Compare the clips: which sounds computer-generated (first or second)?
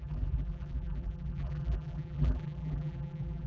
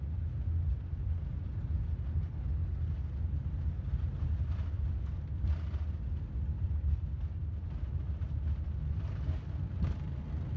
first